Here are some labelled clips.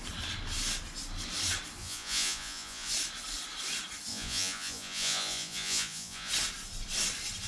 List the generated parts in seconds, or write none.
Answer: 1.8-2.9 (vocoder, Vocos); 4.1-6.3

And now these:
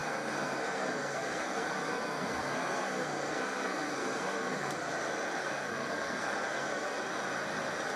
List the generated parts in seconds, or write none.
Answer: 0.0-4.8 (codec, SNAC); 5.4-7.0

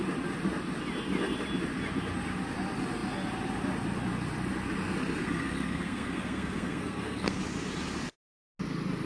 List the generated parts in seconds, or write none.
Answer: 5.2-7.4 (codec, SNAC)

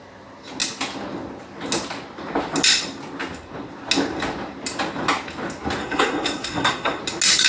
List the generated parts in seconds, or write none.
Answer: 5.8-7.0 (codec, SNAC)

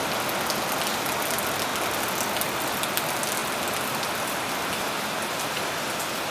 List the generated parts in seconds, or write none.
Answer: none

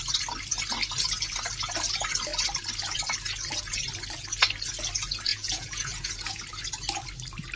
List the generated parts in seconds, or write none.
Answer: 5.3-6.4 (vocoder, Vocos)

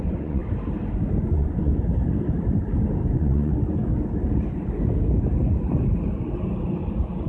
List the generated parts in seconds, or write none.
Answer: 0.0-0.4 (vocoder, Vocos); 1.2-1.7; 3.1-3.5